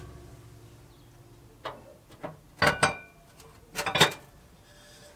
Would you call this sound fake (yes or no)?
no